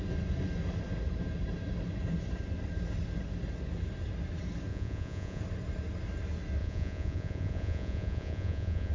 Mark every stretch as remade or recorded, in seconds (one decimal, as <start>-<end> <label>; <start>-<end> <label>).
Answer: 0.0-4.7 recorded; 4.7-5.4 remade; 5.4-6.6 recorded; 6.6-8.9 remade